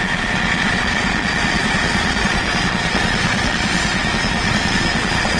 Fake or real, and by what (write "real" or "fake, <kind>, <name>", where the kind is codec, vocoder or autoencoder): fake, vocoder, Vocos